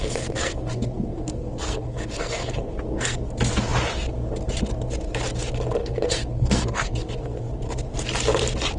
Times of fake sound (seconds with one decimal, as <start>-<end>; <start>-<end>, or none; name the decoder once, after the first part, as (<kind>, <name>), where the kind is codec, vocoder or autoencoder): 0.0-3.3 (codec, SNAC); 5.8-7.5